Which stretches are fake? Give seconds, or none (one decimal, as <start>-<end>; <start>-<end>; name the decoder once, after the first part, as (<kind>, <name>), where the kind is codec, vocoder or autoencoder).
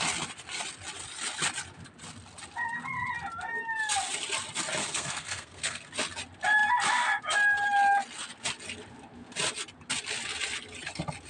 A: 4.8-5.9 (codec, SNAC)